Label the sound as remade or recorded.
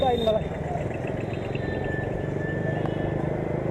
recorded